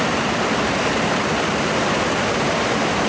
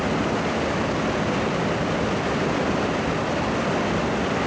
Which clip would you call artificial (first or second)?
first